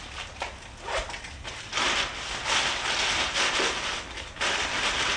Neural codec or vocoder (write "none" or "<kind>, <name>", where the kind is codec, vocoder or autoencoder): none